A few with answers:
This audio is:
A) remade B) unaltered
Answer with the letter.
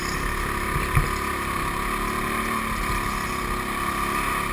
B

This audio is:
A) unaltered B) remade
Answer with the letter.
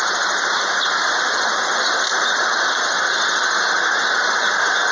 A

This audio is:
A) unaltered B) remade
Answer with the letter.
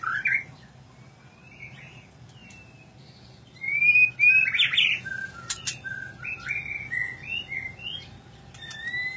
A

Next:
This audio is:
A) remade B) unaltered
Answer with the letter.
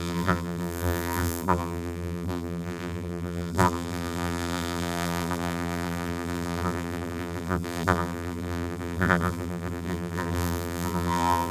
A